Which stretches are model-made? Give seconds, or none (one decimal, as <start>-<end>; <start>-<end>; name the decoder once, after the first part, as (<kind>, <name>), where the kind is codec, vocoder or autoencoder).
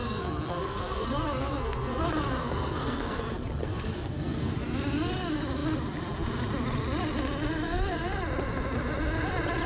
0.0-2.0 (codec, SNAC); 2.4-3.2; 3.6-4.5